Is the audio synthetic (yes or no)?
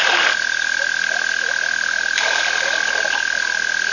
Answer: no